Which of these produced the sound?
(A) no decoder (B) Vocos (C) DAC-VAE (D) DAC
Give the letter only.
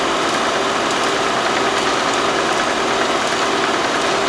A